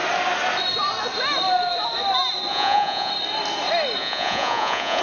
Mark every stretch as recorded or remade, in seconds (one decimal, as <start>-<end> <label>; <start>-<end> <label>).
0.0-2.5 recorded; 2.5-3.1 remade; 3.1-4.0 recorded; 4.0-5.0 remade